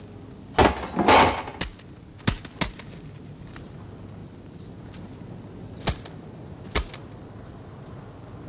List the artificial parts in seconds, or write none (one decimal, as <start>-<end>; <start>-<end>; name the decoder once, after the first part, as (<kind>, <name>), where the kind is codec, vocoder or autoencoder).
none